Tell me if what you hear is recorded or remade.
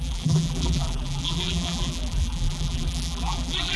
remade